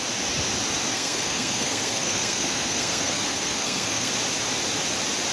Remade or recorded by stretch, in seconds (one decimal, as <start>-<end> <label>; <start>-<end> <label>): 0.0-0.9 recorded; 0.9-4.1 remade; 4.1-5.3 recorded